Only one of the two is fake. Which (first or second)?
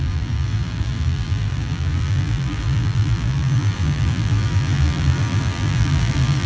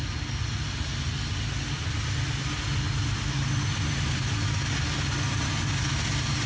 first